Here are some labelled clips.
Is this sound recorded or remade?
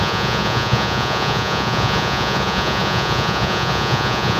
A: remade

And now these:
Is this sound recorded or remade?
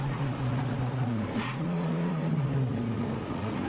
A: remade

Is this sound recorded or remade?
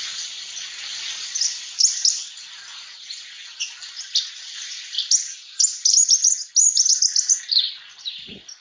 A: recorded